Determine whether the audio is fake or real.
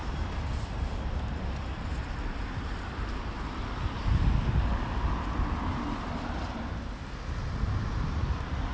fake